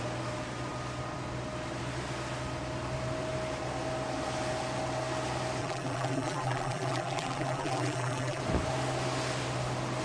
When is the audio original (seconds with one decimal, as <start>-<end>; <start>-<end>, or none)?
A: 0.0-5.6; 8.4-10.0